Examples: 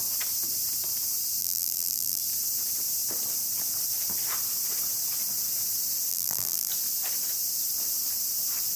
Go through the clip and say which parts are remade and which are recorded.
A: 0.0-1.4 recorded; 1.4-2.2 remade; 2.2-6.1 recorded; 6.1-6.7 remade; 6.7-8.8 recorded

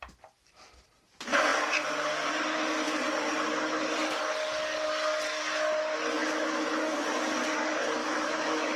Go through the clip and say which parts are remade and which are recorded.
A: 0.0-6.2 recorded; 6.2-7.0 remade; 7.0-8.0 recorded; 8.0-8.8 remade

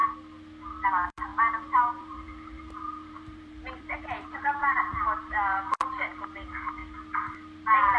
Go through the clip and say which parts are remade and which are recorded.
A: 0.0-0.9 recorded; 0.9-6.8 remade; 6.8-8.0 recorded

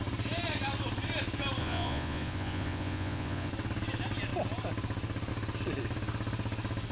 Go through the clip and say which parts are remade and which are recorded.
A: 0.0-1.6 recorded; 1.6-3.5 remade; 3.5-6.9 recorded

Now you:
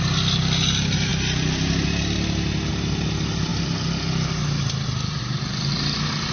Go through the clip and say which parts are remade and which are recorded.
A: 0.0-6.3 recorded